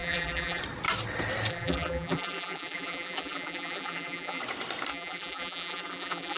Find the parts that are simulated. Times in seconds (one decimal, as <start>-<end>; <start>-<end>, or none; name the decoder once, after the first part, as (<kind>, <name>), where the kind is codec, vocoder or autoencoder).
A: 0.0-0.6 (vocoder, BigVGAN v2); 1.5-4.4; 4.9-6.4